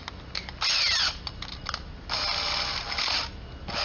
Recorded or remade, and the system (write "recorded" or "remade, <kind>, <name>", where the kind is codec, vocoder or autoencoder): recorded